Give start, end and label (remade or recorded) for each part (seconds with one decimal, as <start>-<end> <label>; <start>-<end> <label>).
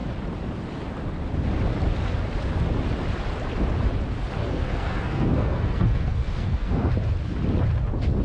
0.0-4.4 recorded; 4.4-6.9 remade; 6.9-8.2 recorded